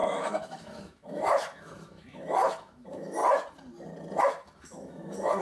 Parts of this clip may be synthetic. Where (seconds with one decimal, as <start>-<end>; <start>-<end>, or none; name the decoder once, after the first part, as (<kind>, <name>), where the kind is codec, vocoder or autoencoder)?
0.0-3.2 (autoencoder, DAC-VAE); 4.2-5.4